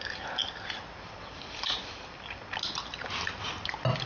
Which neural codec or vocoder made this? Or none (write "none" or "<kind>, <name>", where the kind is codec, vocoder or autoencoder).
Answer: none